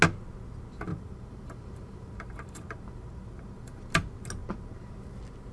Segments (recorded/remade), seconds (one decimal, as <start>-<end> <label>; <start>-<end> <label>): 0.0-0.9 recorded; 0.9-3.8 remade; 3.8-4.4 recorded; 4.4-5.1 remade; 5.1-5.5 recorded